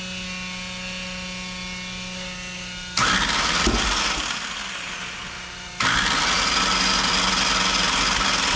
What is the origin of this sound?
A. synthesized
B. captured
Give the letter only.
B